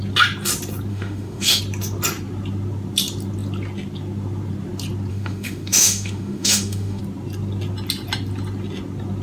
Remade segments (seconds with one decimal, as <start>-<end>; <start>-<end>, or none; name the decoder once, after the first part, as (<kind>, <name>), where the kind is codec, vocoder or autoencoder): 0.9-1.6 (autoencoder, DAC-VAE); 5.1-7.0